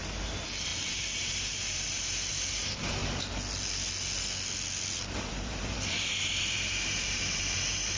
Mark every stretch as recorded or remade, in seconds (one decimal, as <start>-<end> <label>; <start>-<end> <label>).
0.0-3.0 remade; 3.0-5.3 recorded; 5.3-8.0 remade